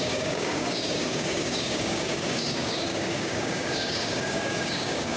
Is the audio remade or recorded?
remade